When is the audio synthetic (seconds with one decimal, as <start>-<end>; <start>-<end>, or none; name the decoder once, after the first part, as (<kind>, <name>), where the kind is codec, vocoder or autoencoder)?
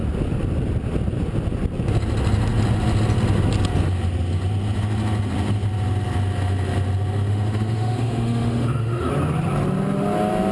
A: 7.3-9.1 (autoencoder, DAC-VAE)